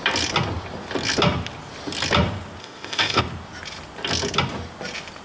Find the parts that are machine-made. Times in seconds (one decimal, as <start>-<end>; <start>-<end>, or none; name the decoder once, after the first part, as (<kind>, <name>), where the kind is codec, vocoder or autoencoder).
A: 2.6-3.2 (codec, ZipCodec)